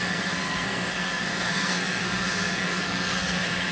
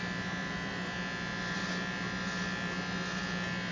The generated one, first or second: first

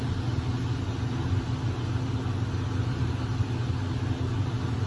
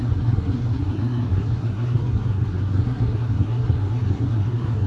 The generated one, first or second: second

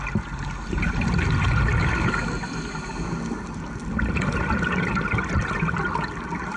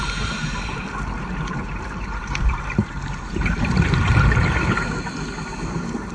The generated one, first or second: second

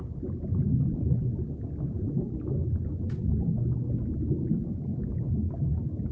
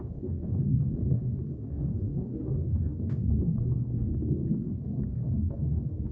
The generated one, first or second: second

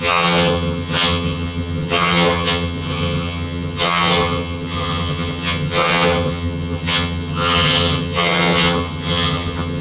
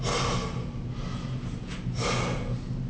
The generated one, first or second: first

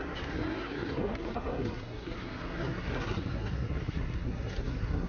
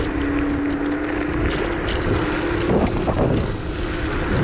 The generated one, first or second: first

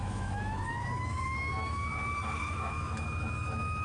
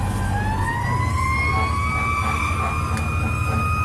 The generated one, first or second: first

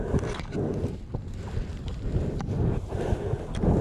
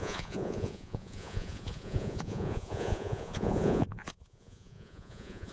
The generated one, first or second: second